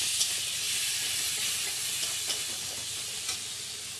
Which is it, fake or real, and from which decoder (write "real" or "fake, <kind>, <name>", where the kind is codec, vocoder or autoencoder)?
real